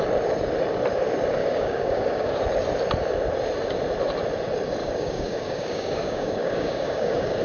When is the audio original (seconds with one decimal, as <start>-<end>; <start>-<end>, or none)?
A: 0.0-1.4; 2.4-4.8